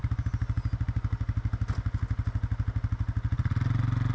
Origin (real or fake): real